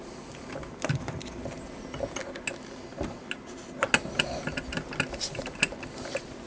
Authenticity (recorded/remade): recorded